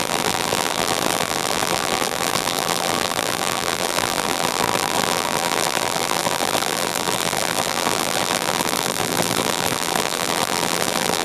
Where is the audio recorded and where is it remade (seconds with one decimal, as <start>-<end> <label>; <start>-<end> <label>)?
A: 0.0-11.2 remade